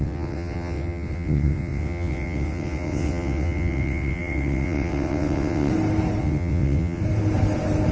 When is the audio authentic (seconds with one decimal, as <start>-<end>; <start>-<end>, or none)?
5.7-6.2; 7.0-7.9